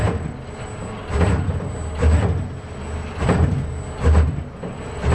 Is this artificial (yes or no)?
no